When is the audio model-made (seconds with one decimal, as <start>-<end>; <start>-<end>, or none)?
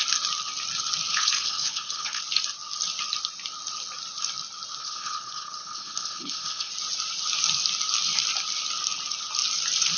1.1-2.2; 4.8-6.7